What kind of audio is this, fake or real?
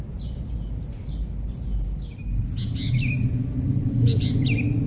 real